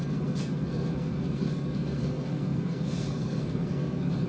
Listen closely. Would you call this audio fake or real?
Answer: fake